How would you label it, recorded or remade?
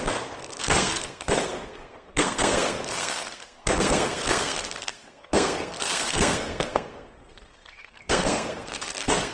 remade